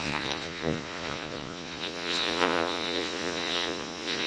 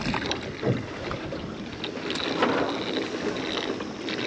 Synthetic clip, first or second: first